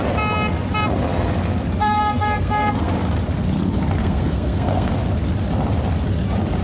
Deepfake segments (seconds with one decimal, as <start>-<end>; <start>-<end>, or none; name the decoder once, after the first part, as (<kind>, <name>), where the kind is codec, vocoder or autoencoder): 1.8-2.9 (codec, SNAC); 4.0-4.9